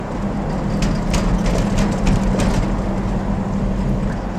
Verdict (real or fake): real